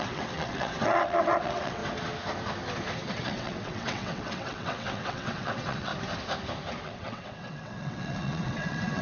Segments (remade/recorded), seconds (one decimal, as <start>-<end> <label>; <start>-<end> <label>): 0.0-1.8 remade; 1.8-3.1 recorded; 3.1-5.9 remade; 5.9-6.8 recorded; 6.8-9.0 remade